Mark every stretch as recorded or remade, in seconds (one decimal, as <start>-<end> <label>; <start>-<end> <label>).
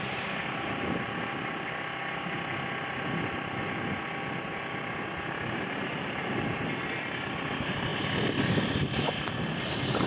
0.0-10.1 recorded